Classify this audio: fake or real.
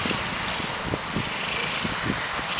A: real